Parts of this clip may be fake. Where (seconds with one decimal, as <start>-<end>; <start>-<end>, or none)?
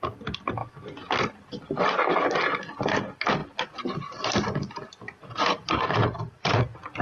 3.4-6.6